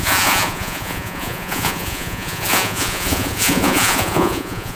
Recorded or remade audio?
remade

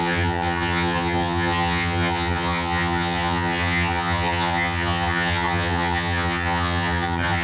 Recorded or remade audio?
remade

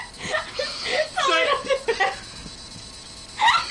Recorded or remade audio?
recorded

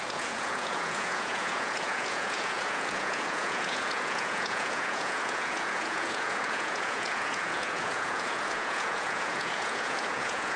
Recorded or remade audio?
remade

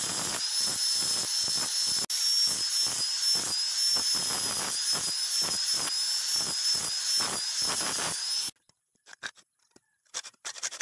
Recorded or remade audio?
recorded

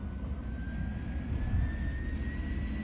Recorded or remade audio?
recorded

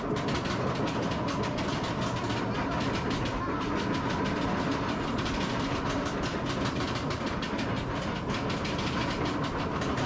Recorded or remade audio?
recorded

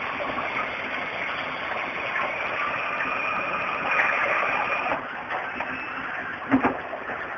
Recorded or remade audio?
recorded